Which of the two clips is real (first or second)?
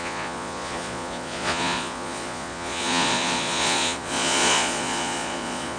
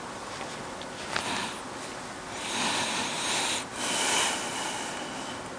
second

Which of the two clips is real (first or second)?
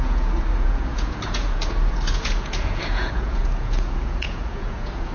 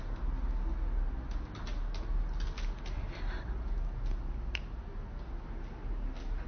second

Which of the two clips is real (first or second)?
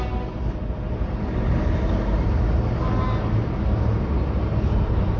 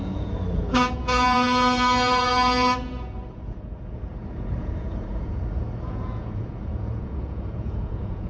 first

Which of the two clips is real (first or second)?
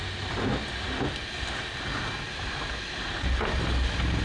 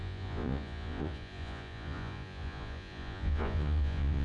first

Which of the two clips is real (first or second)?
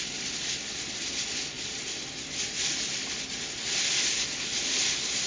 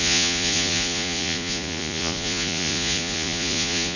first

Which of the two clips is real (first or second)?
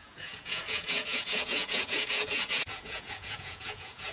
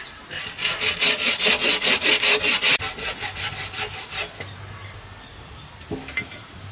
second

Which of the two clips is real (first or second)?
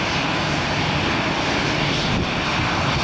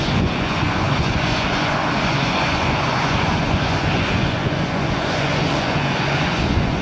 first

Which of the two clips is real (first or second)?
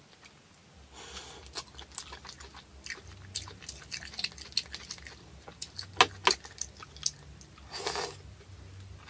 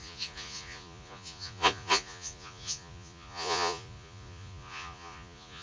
first